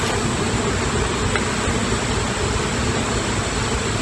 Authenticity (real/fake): real